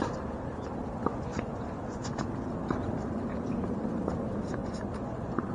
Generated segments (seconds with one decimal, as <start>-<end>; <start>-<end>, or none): 1.1-2.2; 4.6-5.5